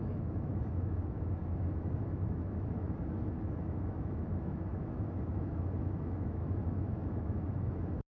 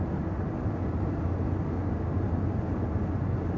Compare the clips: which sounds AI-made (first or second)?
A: first